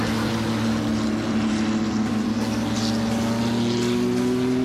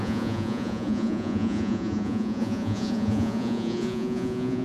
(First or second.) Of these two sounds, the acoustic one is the first